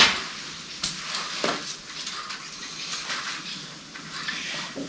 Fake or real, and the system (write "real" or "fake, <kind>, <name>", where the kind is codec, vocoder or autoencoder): real